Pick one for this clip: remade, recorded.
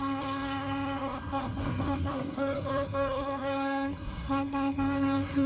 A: remade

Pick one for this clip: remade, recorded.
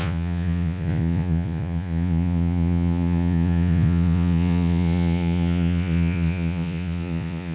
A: remade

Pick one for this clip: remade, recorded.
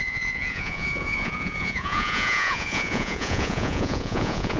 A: remade